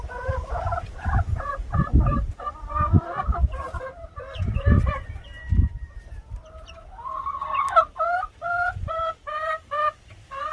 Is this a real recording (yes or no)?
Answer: no